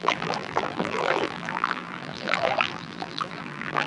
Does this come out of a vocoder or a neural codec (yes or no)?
yes